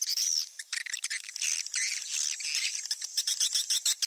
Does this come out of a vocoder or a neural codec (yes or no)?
no